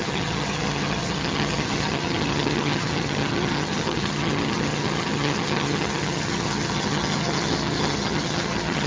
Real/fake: fake